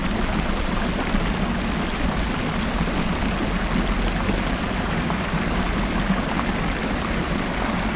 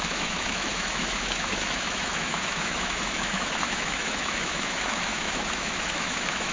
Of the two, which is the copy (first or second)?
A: second